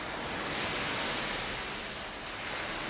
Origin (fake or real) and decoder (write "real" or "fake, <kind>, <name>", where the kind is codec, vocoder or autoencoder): real